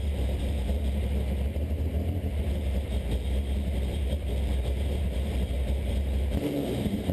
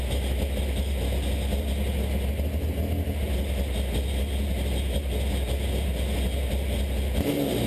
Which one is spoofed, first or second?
first